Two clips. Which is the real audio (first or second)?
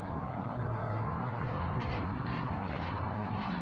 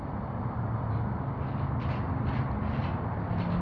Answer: second